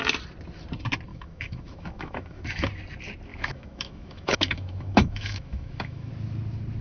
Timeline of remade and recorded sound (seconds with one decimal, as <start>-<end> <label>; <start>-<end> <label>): 0.0-1.1 recorded; 1.1-2.7 remade; 2.7-3.3 recorded; 3.3-6.1 remade; 6.1-6.8 recorded